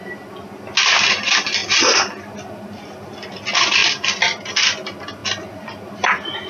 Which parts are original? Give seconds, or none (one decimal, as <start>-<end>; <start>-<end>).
0.0-1.6; 2.4-3.8; 4.5-5.2